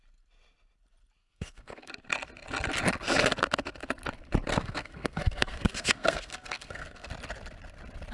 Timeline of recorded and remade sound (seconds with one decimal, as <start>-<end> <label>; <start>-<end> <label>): 0.0-1.2 recorded; 1.2-1.9 remade; 1.9-4.5 recorded; 4.5-7.1 remade; 7.1-8.1 recorded